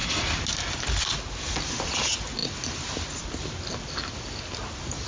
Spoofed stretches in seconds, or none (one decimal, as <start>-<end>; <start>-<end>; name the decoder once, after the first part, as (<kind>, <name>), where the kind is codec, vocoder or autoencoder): none